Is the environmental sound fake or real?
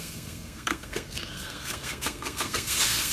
fake